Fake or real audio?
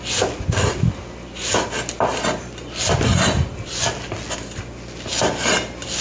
real